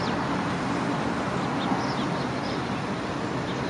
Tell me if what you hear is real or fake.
real